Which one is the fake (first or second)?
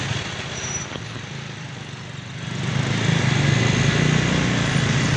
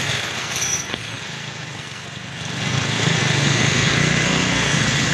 second